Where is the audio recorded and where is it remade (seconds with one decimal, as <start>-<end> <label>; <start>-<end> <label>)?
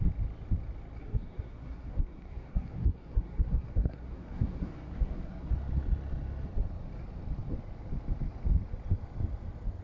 0.0-1.0 recorded; 1.0-5.5 remade; 5.5-9.8 recorded